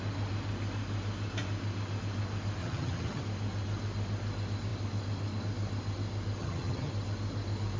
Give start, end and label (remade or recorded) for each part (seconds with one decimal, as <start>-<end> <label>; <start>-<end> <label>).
0.0-2.6 recorded; 2.6-3.2 remade; 3.2-6.4 recorded; 6.4-6.9 remade; 6.9-7.8 recorded